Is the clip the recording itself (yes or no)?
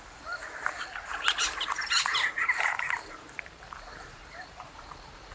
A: no